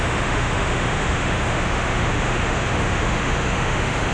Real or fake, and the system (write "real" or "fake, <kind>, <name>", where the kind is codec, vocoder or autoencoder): fake, autoencoder, DAC-VAE